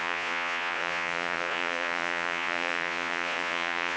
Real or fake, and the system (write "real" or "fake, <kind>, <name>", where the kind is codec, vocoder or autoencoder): fake, vocoder, Vocos